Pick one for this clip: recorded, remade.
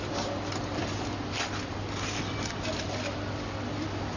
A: recorded